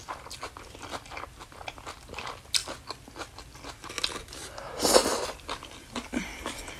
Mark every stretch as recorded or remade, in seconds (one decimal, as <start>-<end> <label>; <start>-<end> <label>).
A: 0.0-6.8 recorded